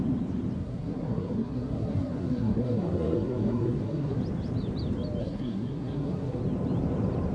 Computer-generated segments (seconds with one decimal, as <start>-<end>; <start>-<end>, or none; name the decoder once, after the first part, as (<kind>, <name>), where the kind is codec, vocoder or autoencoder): 0.6-4.2 (codec, SNAC); 5.2-6.4